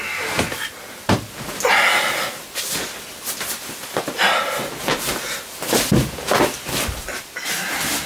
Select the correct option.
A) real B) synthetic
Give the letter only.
A